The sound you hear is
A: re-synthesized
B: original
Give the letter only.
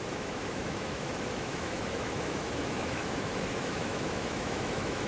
A